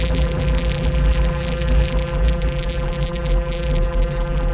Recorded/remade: remade